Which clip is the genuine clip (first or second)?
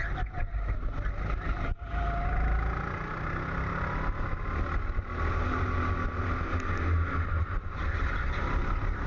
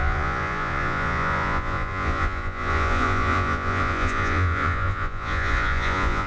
first